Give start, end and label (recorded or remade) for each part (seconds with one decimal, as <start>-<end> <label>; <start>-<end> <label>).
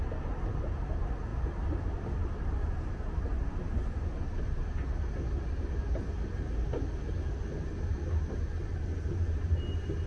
0.0-10.1 recorded